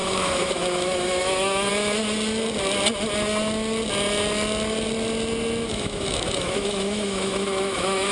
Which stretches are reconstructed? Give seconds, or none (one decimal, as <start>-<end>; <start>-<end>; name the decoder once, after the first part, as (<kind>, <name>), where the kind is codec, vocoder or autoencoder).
0.0-1.7 (autoencoder, DAC-VAE); 5.7-8.1